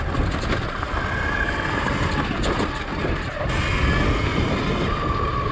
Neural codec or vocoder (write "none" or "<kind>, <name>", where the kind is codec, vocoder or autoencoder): none